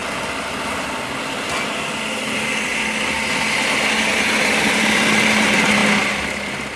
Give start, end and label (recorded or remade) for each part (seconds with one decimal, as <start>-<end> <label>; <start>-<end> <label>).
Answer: 0.0-6.8 recorded